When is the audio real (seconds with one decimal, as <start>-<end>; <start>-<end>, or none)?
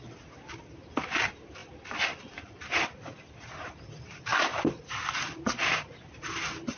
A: 0.0-1.6; 3.8-4.3; 5.9-6.8